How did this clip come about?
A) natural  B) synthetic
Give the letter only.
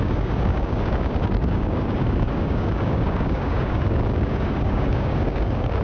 B